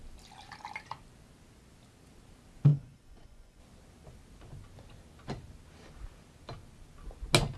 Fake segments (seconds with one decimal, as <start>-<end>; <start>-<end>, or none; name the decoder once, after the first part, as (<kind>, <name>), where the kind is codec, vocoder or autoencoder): 2.7-3.6 (vocoder, Vocos)